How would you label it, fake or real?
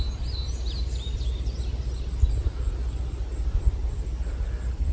real